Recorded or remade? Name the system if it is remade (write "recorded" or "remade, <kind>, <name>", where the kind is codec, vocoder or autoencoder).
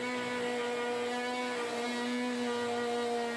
recorded